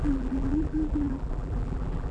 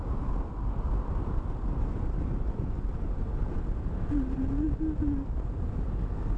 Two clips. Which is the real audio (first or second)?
second